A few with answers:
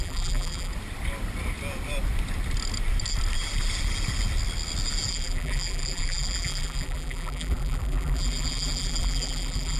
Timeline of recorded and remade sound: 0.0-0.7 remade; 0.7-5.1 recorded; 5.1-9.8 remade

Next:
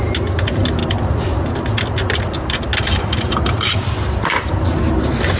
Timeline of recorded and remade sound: 0.0-0.8 recorded; 0.8-3.7 remade; 3.7-5.4 recorded

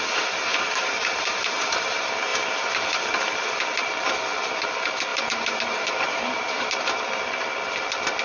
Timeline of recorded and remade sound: 0.0-0.5 recorded; 0.5-1.8 remade; 1.8-5.1 recorded; 5.1-6.7 remade; 6.7-8.2 recorded